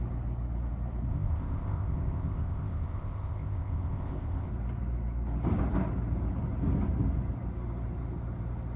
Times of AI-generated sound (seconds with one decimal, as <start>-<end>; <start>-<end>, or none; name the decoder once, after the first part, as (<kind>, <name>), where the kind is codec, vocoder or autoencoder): 1.1-4.5 (codec, ZipCodec)